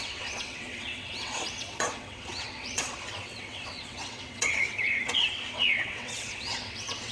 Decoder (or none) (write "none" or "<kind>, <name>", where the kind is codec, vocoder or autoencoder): vocoder, WaveNeXt